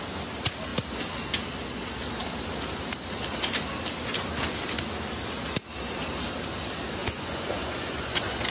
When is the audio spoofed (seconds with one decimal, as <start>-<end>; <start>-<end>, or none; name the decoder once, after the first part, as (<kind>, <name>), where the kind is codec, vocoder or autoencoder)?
7.0-8.5 (vocoder, Vocos)